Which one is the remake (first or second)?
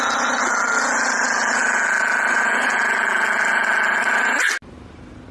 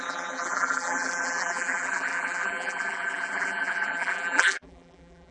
second